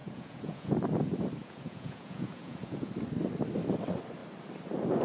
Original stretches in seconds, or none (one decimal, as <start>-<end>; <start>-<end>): 0.7-1.4; 2.9-5.0